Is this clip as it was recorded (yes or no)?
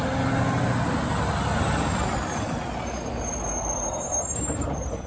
yes